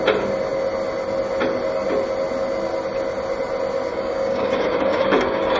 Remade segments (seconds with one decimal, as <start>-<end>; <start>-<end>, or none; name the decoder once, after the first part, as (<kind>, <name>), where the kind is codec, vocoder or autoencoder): 3.9-5.6 (codec, DAC)